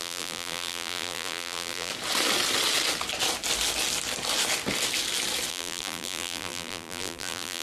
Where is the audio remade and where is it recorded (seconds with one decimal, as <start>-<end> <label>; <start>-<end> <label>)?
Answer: 0.0-1.9 remade; 1.9-5.5 recorded; 5.5-7.6 remade